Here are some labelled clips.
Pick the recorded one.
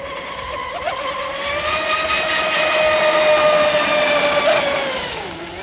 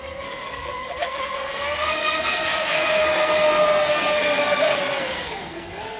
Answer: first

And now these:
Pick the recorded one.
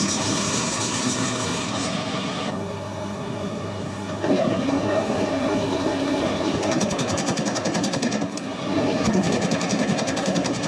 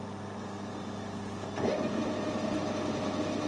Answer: second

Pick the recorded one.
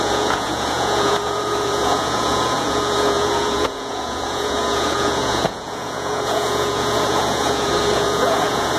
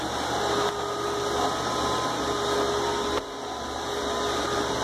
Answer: second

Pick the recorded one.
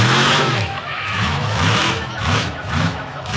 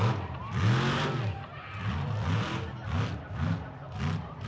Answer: second